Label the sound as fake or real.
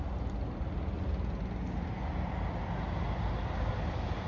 real